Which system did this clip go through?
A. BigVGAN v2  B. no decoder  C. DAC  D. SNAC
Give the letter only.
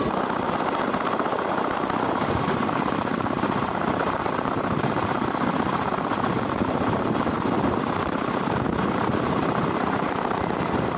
A